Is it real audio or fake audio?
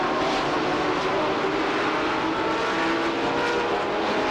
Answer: real